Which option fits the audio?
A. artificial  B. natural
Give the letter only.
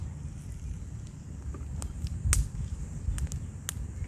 B